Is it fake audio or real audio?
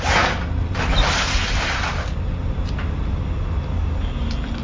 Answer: real